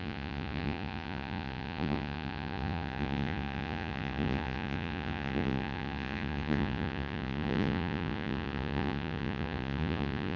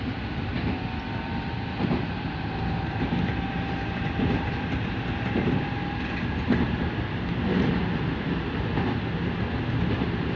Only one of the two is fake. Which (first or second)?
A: first